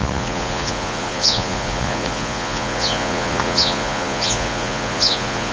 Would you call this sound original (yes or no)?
no